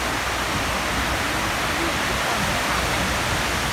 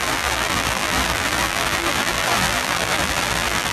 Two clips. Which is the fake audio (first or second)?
second